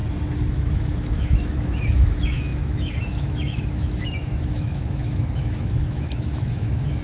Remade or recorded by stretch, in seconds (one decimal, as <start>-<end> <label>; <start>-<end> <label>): 0.0-0.5 recorded; 0.5-7.0 remade